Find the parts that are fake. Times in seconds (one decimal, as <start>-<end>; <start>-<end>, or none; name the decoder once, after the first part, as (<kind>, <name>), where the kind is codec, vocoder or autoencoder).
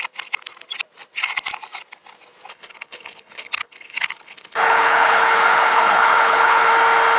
2.5-6.7 (codec, HILCodec)